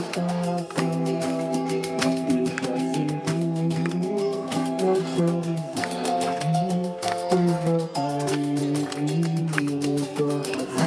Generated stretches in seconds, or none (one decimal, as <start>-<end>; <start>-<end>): 0.0-8.6; 9.4-10.9